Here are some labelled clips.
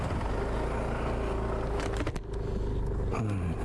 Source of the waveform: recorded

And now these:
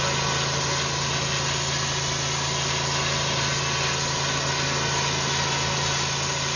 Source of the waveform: recorded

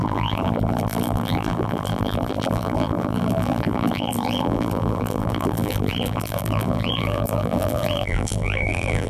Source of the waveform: remade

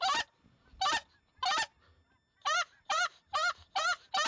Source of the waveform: recorded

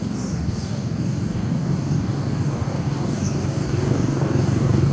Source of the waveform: remade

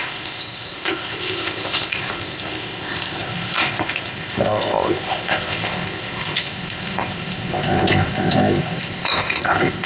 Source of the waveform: remade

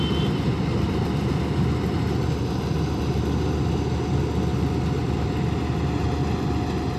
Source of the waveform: recorded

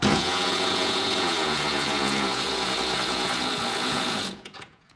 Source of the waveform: remade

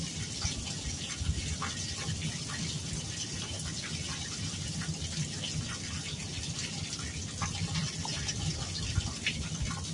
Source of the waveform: recorded